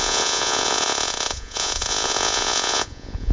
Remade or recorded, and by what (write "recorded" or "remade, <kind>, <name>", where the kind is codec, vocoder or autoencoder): remade, vocoder, Vocos